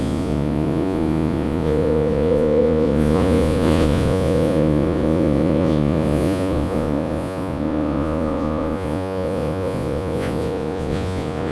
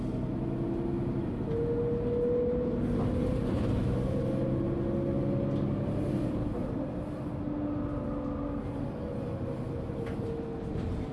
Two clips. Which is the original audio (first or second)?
second